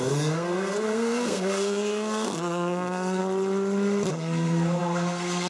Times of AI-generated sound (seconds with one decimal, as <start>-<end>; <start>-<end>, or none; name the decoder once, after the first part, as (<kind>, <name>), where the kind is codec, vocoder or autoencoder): 0.0-3.2 (codec, SNAC); 4.1-5.5